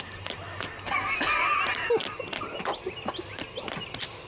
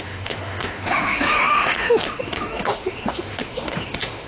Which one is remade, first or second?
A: second